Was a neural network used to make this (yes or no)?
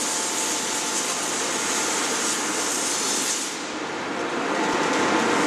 yes